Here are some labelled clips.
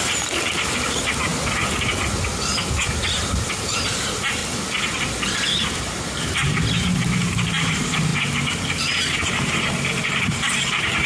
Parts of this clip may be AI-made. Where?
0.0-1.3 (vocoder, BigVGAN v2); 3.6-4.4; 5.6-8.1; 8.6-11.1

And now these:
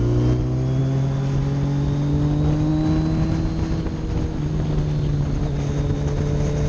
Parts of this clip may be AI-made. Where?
none

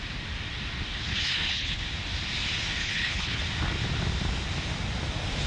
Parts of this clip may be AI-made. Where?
1.1-1.8 (codec, HILCodec); 2.8-3.4

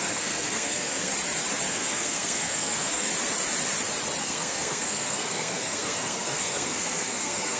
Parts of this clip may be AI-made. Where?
0.0-1.1 (codec, SNAC); 1.7-3.1; 4.2-7.6

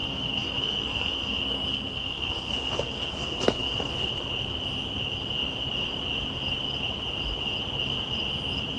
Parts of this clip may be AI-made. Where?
0.0-3.9 (codec, SNAC)